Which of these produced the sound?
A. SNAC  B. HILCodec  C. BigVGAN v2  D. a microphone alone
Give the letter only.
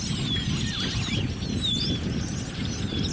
D